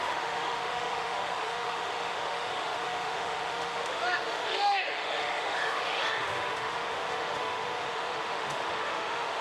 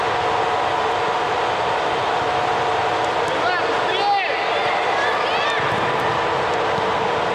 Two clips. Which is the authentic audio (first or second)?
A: second